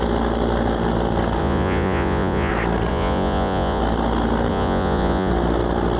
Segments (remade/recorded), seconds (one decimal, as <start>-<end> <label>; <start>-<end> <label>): 0.0-1.4 recorded; 1.4-2.5 remade; 2.5-2.9 recorded; 2.9-3.8 remade; 3.8-4.5 recorded; 4.5-5.3 remade; 5.3-6.0 recorded